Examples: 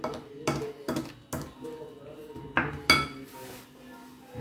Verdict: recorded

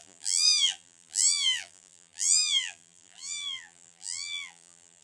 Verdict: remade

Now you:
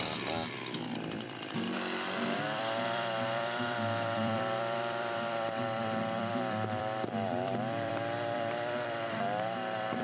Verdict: remade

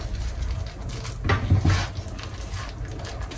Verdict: recorded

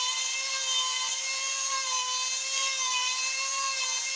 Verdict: remade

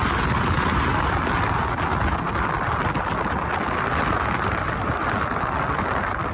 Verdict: recorded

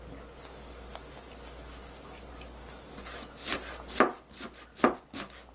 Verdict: recorded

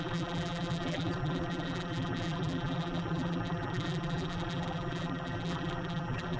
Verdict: remade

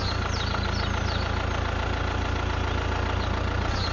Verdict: recorded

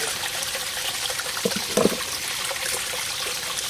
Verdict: recorded